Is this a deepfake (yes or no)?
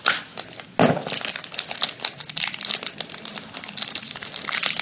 no